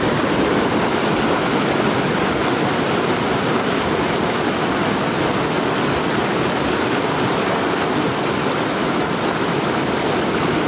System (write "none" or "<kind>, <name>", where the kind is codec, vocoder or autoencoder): none